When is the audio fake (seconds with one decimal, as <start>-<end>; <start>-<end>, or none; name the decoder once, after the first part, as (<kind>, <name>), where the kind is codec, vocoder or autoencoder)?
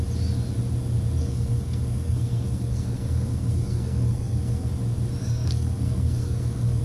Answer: 1.2-4.7 (codec, SNAC); 5.2-6.8